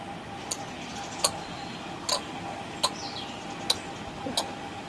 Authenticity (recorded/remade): recorded